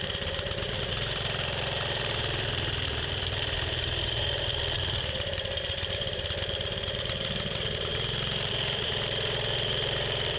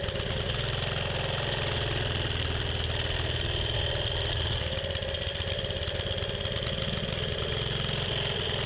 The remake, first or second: first